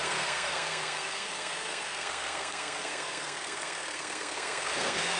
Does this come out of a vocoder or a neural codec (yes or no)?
yes